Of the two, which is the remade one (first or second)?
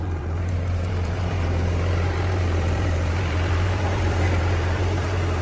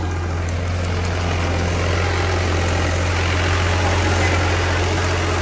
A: first